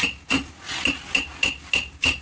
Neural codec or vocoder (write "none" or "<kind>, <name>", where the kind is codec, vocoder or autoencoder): none